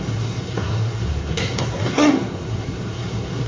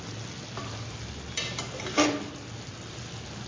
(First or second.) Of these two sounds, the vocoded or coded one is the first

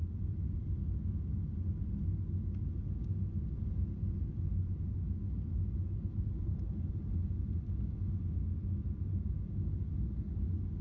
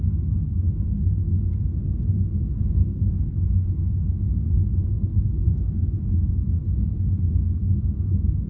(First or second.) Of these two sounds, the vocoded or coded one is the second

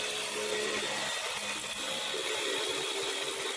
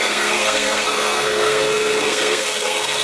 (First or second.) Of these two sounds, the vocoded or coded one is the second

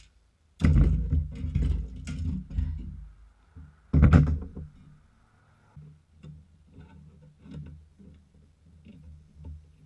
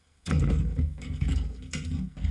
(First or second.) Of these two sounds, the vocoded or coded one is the second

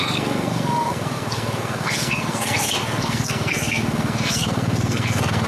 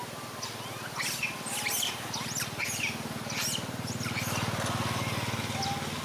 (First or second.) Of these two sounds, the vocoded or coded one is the first